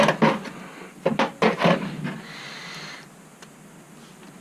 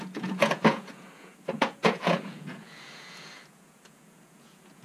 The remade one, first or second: second